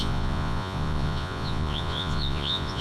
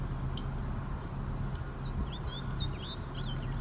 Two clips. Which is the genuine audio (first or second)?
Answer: second